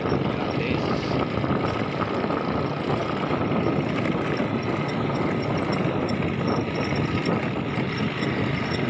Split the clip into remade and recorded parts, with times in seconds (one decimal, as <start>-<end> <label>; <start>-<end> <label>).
0.0-8.9 recorded